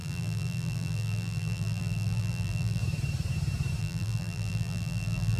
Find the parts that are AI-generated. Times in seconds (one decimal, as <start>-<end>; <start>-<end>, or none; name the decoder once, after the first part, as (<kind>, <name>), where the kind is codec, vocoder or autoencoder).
0.0-2.8 (vocoder, BigVGAN v2); 3.8-5.4